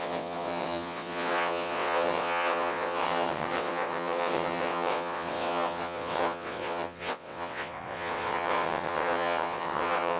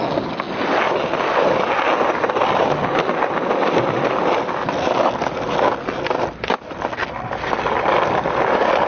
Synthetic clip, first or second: first